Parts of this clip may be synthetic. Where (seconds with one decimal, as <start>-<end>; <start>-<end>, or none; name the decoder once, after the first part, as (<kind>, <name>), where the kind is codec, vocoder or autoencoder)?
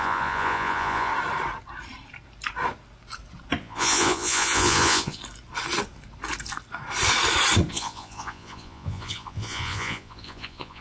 0.0-1.1 (vocoder, Vocos); 3.6-5.2; 7.7-10.8